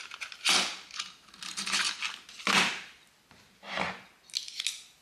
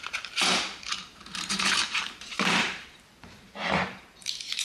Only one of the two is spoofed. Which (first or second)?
second